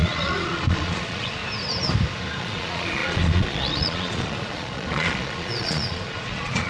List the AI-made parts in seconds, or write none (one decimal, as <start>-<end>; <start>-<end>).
0.0-1.4; 2.4-6.7